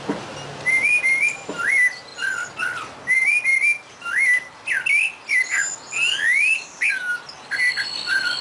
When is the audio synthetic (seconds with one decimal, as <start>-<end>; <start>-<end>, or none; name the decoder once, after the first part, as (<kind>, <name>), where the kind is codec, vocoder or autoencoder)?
none